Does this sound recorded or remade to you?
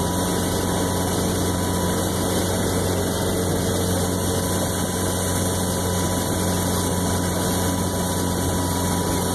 recorded